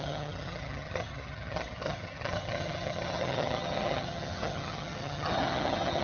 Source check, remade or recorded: remade